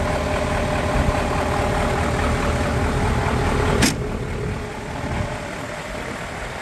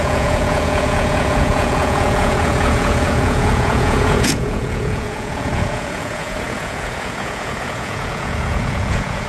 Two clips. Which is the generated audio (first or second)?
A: second